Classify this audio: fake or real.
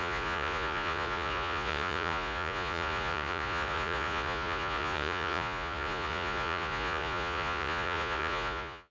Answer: fake